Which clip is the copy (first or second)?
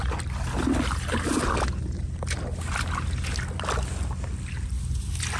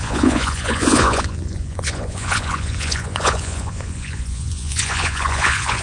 second